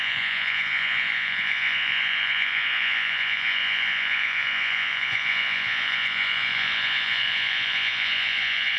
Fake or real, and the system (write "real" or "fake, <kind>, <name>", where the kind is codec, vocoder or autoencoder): fake, vocoder, Vocos